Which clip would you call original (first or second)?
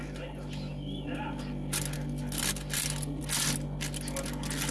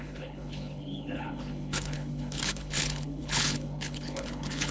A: first